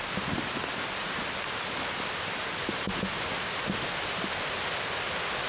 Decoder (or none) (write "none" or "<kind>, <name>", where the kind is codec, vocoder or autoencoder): none